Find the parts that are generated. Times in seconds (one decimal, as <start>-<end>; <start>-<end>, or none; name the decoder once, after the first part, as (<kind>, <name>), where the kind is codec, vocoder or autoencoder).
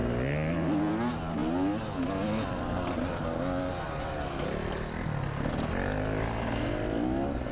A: none